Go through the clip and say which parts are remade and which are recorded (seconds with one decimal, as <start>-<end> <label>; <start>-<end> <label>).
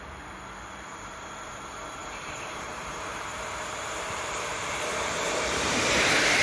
0.0-0.7 recorded; 0.7-1.5 remade; 1.5-2.0 recorded; 2.0-5.8 remade; 5.8-6.4 recorded